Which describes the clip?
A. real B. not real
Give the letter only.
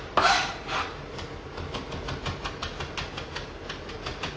A